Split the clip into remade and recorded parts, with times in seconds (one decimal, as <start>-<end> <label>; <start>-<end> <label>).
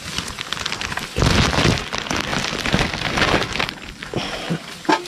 0.0-5.1 recorded